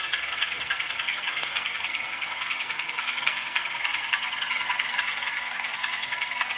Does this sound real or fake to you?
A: fake